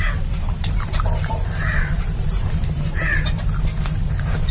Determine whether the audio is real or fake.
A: fake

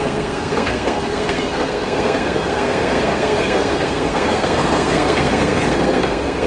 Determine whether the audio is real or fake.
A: fake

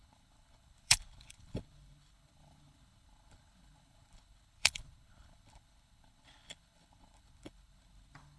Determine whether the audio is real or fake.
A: fake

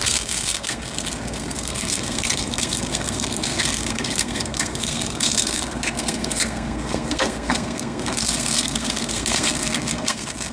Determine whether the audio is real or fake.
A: fake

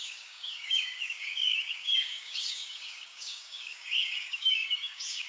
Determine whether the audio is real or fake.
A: fake